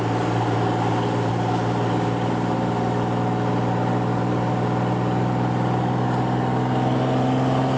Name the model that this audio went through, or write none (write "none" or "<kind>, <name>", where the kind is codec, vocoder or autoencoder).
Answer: none